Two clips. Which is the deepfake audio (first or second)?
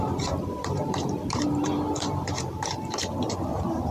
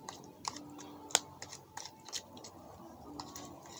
first